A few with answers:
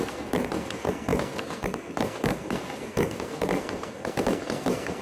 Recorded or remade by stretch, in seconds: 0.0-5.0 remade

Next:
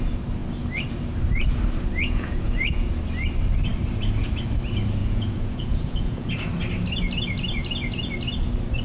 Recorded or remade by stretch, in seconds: 0.0-1.9 recorded; 1.9-2.9 remade; 2.9-5.0 recorded; 5.0-6.5 remade; 6.5-8.8 recorded

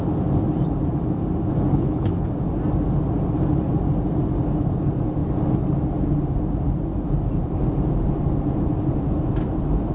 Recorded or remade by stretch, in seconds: 0.0-1.7 recorded; 1.7-2.3 remade; 2.3-9.9 recorded

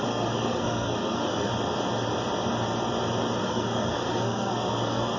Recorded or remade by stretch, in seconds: 0.0-1.5 remade; 1.5-3.4 recorded; 3.4-5.2 remade

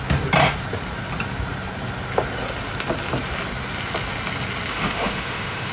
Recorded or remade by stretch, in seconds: 0.0-4.7 recorded; 4.7-5.7 remade